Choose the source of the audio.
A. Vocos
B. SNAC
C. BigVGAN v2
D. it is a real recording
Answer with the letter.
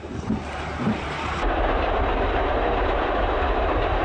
C